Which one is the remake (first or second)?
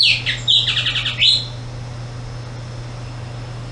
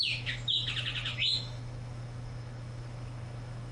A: second